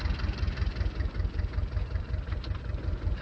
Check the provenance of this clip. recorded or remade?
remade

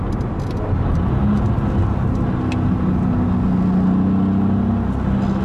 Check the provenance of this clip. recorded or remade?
recorded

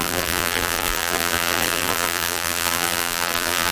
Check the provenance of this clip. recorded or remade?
remade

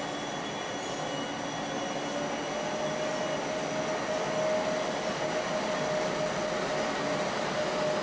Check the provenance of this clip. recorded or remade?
recorded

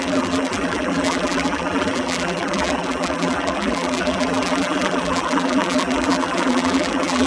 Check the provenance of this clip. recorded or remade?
remade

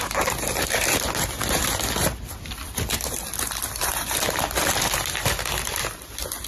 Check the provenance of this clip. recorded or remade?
remade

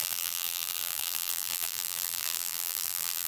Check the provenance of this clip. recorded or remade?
remade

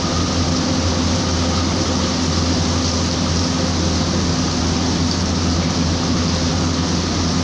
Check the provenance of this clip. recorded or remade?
recorded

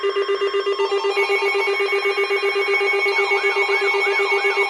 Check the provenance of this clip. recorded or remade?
recorded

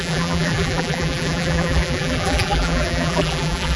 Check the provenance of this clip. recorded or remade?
remade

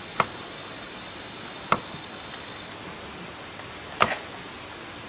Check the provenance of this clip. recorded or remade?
recorded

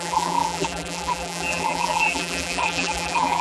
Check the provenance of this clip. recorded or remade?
remade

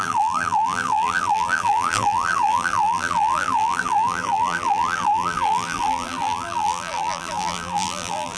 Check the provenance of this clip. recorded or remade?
remade